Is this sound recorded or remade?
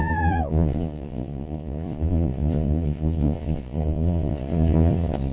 remade